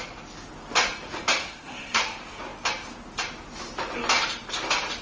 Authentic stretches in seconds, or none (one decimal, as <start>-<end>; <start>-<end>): 0.0-1.4; 2.0-5.0